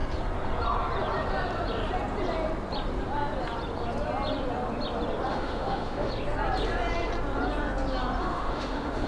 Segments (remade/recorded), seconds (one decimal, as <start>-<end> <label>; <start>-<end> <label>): 0.0-5.3 recorded; 5.3-6.1 remade; 6.1-8.2 recorded; 8.2-9.1 remade